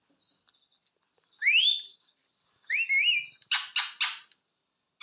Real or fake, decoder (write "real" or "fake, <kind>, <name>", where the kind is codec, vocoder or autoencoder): real